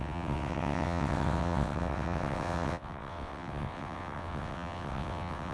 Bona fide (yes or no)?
no